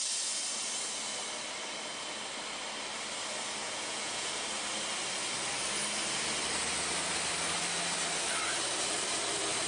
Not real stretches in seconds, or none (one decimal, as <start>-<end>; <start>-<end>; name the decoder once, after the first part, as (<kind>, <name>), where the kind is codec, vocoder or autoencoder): 3.6-4.3 (vocoder, Vocos)